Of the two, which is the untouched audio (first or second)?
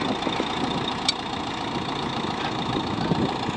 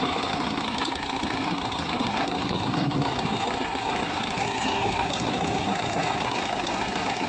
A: first